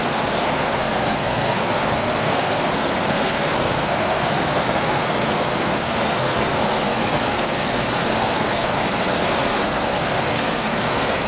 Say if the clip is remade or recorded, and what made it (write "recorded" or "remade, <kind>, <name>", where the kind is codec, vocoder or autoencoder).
remade, codec, SNAC